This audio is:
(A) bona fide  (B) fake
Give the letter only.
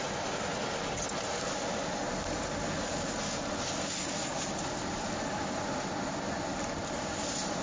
A